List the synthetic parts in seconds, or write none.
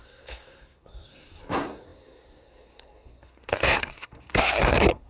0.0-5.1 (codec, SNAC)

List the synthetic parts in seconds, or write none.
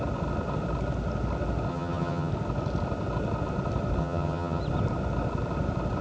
1.7-2.3 (vocoder, HiFi-GAN); 4.0-4.6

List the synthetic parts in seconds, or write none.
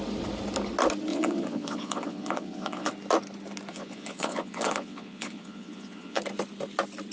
1.1-2.9 (vocoder, Vocos); 3.7-6.2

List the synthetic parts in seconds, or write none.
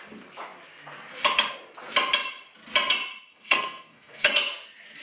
3.3-4.3 (codec, SNAC)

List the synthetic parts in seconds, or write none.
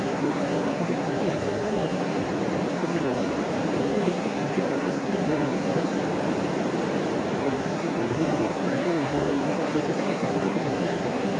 0.0-2.2 (codec, SNAC); 2.7-3.3; 3.8-6.0; 7.4-11.4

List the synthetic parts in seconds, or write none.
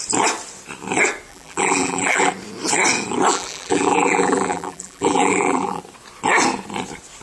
1.3-2.3 (vocoder, BigVGAN v2); 3.3-5.8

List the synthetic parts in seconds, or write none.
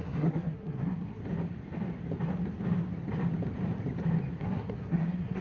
0.0-1.2 (codec, SNAC); 4.4-5.4